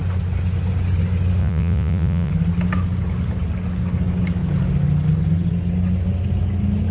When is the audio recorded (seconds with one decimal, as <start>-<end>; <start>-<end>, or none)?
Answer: 0.0-1.4; 2.3-6.9